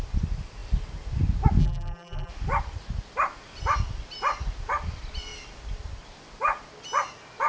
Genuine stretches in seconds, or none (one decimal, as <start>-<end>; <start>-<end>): 0.0-1.6; 2.3-7.5